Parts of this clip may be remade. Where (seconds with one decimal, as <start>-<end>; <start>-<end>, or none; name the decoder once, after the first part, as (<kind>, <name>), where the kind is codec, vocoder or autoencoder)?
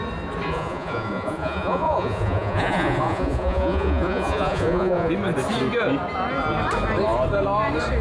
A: 0.5-5.1 (vocoder, Vocos)